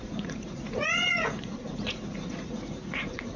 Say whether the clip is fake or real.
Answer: fake